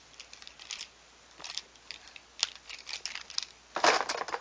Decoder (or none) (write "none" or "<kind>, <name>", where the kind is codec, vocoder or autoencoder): none